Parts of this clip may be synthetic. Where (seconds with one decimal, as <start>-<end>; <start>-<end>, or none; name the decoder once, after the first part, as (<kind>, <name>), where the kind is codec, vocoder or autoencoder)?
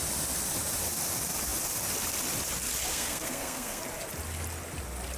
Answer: 2.9-3.8 (codec, SNAC)